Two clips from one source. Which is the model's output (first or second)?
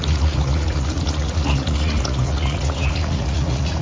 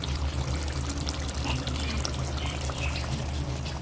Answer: first